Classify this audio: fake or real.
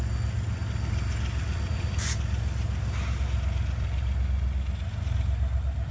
real